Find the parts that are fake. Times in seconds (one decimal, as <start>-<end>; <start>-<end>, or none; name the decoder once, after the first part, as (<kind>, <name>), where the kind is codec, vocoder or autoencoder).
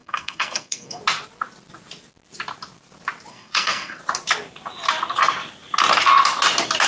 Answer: 0.0-1.0 (codec, SNAC); 3.3-4.0